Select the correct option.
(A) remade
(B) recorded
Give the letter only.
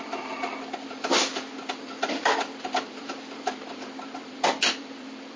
A